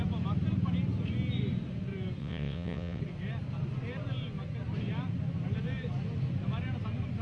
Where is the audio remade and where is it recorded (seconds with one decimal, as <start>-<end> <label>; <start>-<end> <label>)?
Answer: 0.0-2.2 recorded; 2.2-3.0 remade; 3.0-7.2 recorded